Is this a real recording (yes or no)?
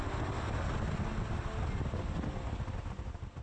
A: yes